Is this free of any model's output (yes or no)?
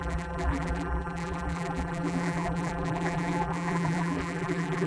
no